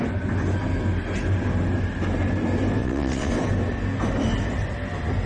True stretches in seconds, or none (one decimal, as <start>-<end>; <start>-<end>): 0.0-2.8; 3.3-5.3